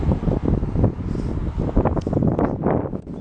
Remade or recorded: recorded